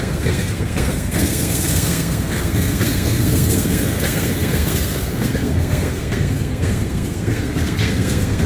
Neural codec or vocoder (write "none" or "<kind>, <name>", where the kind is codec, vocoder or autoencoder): codec, SNAC